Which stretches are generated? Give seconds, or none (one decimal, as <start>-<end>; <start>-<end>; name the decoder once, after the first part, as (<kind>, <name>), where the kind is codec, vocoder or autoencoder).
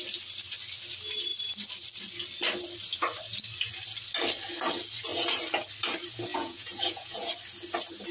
6.3-7.3 (vocoder, Vocos)